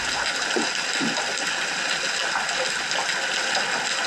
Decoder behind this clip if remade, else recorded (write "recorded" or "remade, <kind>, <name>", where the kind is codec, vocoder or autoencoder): recorded